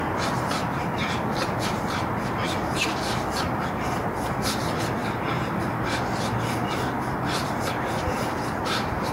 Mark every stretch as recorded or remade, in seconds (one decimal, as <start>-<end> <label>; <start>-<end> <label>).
0.0-9.1 recorded